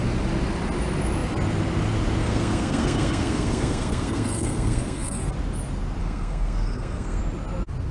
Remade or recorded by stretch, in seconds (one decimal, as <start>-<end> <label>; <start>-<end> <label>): 0.0-2.2 recorded; 2.2-5.3 remade; 5.3-6.0 recorded; 6.0-7.2 remade; 7.2-7.9 recorded